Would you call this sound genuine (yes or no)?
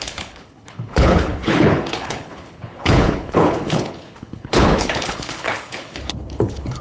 no